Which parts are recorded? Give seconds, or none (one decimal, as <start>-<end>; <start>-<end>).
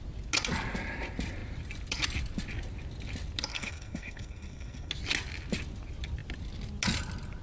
0.0-3.5; 4.9-7.4